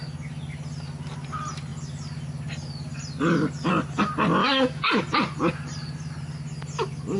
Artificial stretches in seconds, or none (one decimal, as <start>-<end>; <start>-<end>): 4.4-5.0